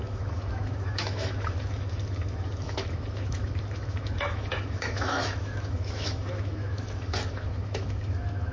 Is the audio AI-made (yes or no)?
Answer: yes